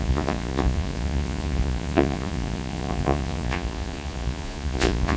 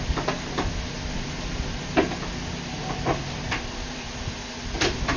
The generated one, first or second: first